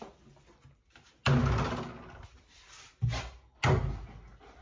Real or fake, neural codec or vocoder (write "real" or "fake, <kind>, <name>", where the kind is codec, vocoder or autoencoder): real